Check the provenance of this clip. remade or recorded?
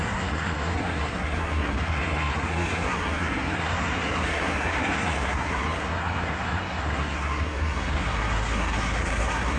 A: remade